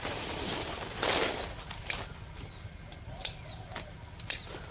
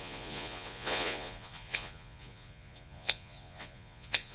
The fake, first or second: second